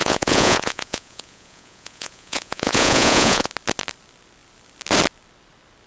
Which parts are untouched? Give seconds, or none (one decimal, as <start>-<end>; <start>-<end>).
3.5-5.9